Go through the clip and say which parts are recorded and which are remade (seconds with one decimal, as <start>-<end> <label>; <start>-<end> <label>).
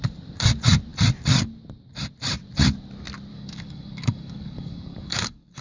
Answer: 0.0-3.3 recorded; 3.3-5.6 remade